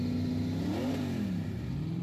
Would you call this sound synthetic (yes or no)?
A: no